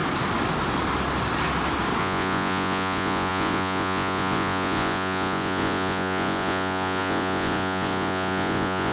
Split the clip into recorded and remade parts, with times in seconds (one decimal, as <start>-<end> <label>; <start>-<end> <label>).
0.0-2.0 recorded; 2.0-8.9 remade